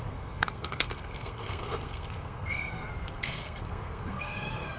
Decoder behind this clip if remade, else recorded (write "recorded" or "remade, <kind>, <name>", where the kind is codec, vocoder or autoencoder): remade, codec, SNAC